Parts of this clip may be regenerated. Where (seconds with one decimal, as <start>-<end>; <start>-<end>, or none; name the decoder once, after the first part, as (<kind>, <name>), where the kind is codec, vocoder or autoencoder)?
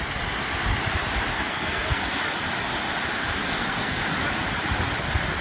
1.3-2.2 (codec, SNAC); 3.2-4.0